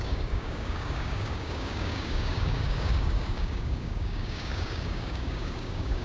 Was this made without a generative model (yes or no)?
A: no